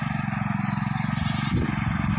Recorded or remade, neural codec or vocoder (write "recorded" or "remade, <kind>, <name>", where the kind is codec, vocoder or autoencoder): recorded